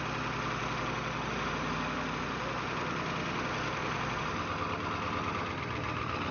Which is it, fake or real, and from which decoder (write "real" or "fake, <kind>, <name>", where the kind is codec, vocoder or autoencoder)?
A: real